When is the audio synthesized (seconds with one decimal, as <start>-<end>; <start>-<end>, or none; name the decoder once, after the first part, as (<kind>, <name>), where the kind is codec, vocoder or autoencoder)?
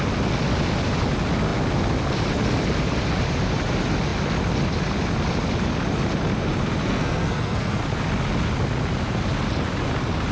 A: 6.8-7.8 (codec, SNAC)